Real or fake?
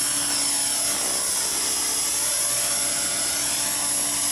real